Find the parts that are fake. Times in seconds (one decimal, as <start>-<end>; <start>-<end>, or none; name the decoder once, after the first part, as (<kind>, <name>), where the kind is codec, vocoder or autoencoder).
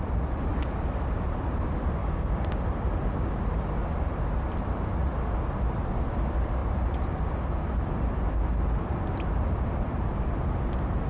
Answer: 2.0-2.6 (codec, DAC)